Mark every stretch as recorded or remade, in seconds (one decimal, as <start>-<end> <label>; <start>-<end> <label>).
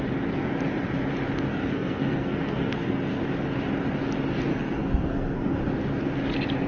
0.0-1.5 recorded; 1.5-3.2 remade; 3.2-4.5 recorded; 4.5-5.6 remade; 5.6-6.7 recorded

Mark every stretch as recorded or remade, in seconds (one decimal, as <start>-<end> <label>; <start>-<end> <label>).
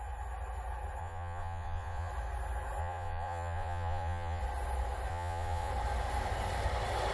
0.0-1.0 recorded; 1.0-2.1 remade; 2.1-2.8 recorded; 2.8-4.4 remade; 4.4-5.1 recorded; 5.1-5.7 remade; 5.7-7.1 recorded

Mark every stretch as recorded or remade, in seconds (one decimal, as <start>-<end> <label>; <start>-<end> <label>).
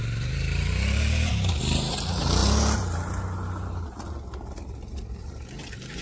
0.0-6.0 recorded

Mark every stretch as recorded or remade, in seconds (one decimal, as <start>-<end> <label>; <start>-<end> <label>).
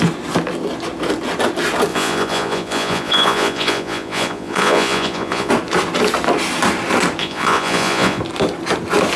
0.0-1.9 recorded; 1.9-5.5 remade; 5.5-7.2 recorded; 7.2-8.2 remade; 8.2-9.2 recorded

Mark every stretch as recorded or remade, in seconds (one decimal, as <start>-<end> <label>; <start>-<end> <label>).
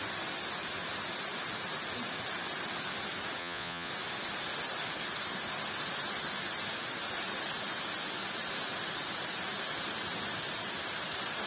0.0-3.4 recorded; 3.4-3.9 remade; 3.9-11.5 recorded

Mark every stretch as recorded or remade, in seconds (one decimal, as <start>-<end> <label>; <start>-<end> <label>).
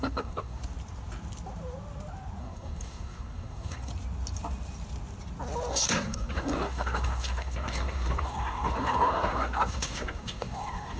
0.0-0.6 remade; 0.6-2.4 recorded; 2.4-3.9 remade; 3.9-5.7 recorded; 5.7-11.0 remade